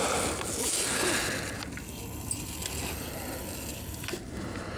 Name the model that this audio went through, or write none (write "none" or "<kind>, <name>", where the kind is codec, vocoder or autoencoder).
none